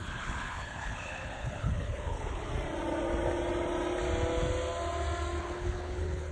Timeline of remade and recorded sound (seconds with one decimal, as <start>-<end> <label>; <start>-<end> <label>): 0.0-2.5 remade; 2.5-5.4 recorded; 5.4-6.3 remade